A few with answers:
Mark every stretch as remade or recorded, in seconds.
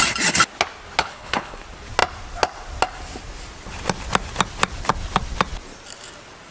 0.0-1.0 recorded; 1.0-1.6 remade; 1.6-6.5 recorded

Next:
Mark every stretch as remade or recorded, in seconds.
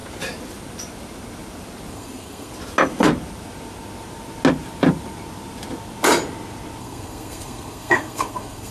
0.0-1.9 recorded; 1.9-2.5 remade; 2.5-6.8 recorded; 6.8-8.7 remade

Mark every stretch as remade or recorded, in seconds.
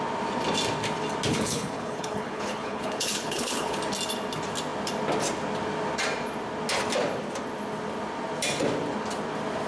0.0-1.3 recorded; 1.3-3.8 remade; 3.8-9.7 recorded